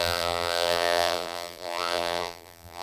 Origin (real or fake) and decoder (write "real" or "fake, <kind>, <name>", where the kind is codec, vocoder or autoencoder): fake, vocoder, BigVGAN v2